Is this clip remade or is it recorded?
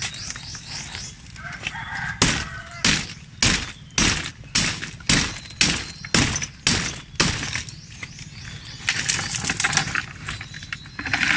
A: recorded